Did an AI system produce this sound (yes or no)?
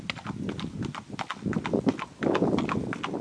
no